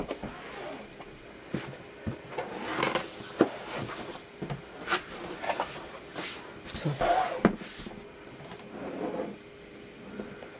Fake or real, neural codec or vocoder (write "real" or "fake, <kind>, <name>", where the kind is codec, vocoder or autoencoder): real